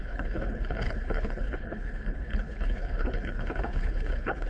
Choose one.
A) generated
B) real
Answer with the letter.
A